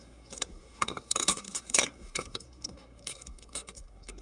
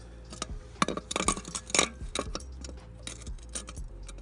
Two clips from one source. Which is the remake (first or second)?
first